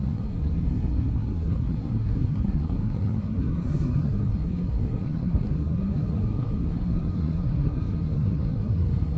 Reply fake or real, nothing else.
fake